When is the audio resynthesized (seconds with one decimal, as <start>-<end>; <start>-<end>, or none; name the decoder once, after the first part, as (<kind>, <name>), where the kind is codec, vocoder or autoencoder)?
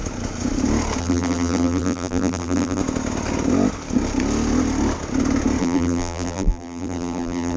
1.0-2.8 (vocoder, BigVGAN v2); 5.6-7.6